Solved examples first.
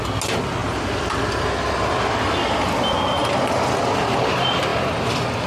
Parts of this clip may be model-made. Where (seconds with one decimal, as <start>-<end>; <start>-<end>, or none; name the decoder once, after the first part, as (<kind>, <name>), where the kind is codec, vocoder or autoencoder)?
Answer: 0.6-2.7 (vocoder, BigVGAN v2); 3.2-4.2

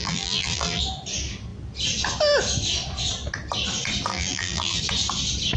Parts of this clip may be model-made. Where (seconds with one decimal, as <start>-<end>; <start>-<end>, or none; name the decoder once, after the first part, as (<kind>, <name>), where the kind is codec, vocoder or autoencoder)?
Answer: 0.0-0.8 (vocoder, BigVGAN v2); 4.1-4.8

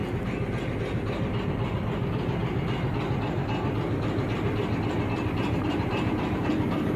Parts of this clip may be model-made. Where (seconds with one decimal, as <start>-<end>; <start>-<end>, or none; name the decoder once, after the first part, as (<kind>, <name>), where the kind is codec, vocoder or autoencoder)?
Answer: 1.4-2.4 (vocoder, BigVGAN v2); 6.2-7.0

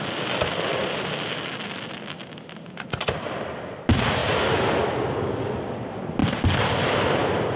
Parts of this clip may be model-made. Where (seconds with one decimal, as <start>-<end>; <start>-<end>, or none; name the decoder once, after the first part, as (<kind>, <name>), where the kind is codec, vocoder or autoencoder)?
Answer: 6.2-7.6 (vocoder, BigVGAN v2)

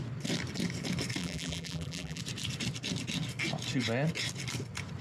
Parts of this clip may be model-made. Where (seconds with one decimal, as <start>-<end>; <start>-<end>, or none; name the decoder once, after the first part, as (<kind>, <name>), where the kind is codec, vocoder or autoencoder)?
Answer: 1.2-2.2 (vocoder, BigVGAN v2)

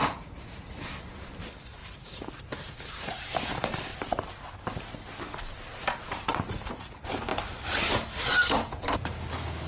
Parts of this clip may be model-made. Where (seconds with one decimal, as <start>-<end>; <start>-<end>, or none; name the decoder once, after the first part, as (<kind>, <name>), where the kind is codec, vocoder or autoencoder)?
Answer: 0.0-3.9 (vocoder, BigVGAN v2); 6.1-7.3; 7.9-9.7

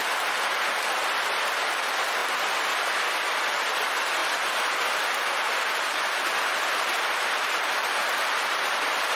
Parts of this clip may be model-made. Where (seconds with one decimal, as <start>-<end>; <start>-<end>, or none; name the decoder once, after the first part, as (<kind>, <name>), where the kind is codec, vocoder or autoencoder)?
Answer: 0.0-2.2 (vocoder, BigVGAN v2); 2.7-4.2; 4.8-9.2